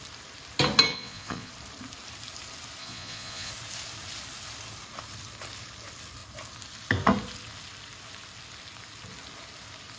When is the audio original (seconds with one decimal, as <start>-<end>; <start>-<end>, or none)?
0.0-0.9; 1.5-2.8; 3.5-10.0